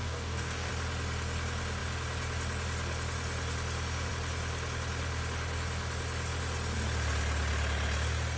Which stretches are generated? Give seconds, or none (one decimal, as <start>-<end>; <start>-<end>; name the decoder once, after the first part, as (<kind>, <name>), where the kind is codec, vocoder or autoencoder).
0.0-0.7 (codec, DAC)